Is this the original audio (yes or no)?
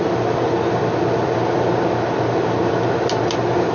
yes